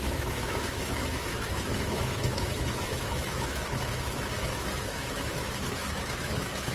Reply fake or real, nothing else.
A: fake